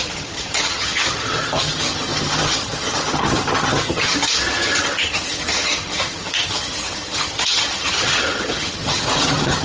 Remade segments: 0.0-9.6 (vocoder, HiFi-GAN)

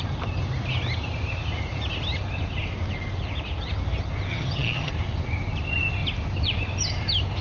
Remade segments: 4.3-4.9 (vocoder, HiFi-GAN)

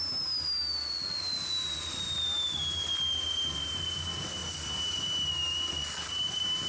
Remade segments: none

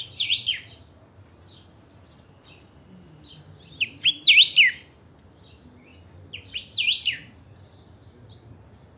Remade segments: none

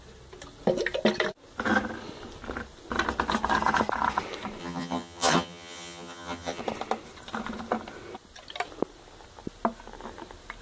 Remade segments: 4.6-6.6 (vocoder, HiFi-GAN)

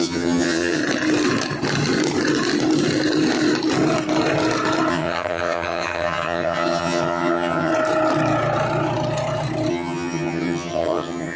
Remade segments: 0.0-0.8 (vocoder, HiFi-GAN); 4.9-7.7; 9.7-11.4

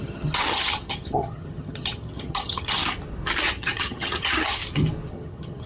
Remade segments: 0.0-2.8 (vocoder, HiFi-GAN); 3.4-4.6; 5.1-5.7

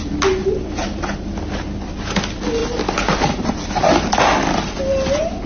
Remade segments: none